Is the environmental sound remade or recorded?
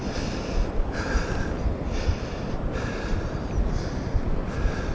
recorded